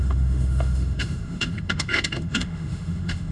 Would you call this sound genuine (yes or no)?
no